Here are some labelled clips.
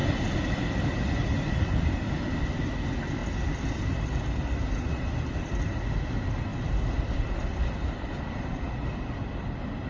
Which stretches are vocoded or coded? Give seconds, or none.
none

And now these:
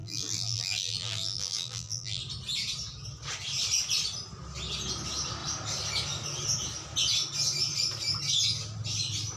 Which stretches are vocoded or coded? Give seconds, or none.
0.0-2.2 (vocoder, BigVGAN v2)

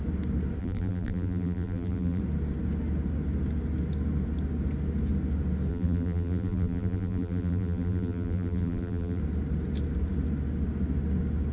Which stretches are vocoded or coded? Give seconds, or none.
0.6-2.2 (vocoder, BigVGAN v2); 5.7-9.2

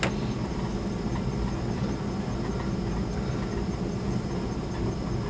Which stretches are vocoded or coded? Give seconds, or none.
none

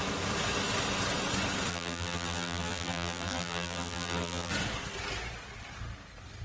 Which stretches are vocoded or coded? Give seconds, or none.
1.7-4.5 (vocoder, BigVGAN v2)